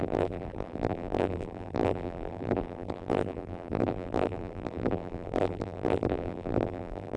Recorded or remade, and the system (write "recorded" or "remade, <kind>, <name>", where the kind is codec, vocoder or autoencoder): remade, vocoder, BigVGAN v2